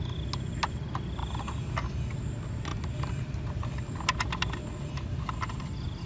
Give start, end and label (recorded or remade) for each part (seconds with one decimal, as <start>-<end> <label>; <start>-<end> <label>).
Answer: 0.0-6.1 recorded

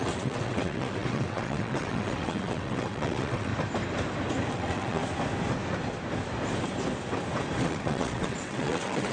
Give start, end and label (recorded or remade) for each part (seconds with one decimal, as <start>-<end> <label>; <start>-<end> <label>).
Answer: 0.0-3.5 remade; 3.5-4.5 recorded; 4.5-5.0 remade; 5.0-7.6 recorded; 7.6-9.1 remade

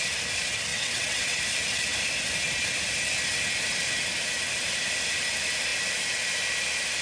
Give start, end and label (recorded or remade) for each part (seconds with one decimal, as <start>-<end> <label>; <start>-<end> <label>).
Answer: 0.0-0.7 recorded; 0.7-1.4 remade; 1.4-7.0 recorded

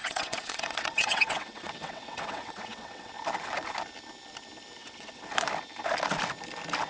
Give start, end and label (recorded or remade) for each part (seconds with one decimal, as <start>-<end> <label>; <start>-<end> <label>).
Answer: 0.0-3.1 remade; 3.1-4.8 recorded; 4.8-5.3 remade; 5.3-6.9 recorded